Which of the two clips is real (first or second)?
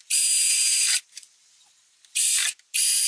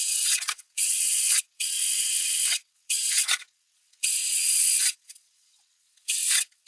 first